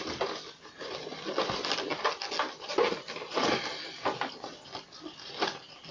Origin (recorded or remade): recorded